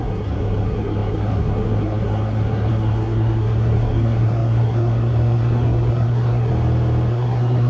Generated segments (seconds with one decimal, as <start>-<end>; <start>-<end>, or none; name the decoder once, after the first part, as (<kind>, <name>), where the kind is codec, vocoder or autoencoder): 0.0-6.5 (codec, SNAC); 7.1-7.7